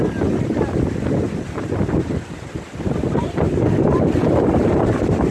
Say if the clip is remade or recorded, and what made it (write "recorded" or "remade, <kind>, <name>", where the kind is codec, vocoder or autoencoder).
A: recorded